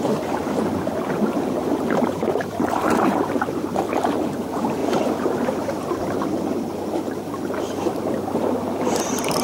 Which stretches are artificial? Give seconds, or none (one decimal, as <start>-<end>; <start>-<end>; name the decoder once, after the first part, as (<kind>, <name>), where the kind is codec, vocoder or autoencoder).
1.6-3.8 (vocoder, BigVGAN v2)